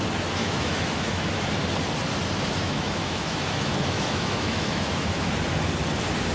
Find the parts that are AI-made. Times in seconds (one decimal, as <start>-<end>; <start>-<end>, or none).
0.4-1.4; 2.6-5.3